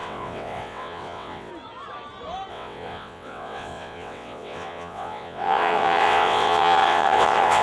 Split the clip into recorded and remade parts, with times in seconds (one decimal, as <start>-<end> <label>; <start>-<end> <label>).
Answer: 0.0-1.5 remade; 1.5-2.5 recorded; 2.5-7.6 remade